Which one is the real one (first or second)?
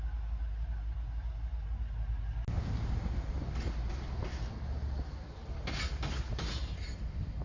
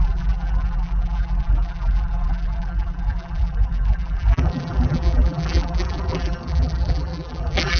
first